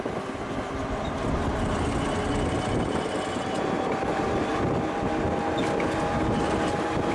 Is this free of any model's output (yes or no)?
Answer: yes